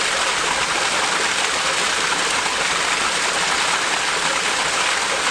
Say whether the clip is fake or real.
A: real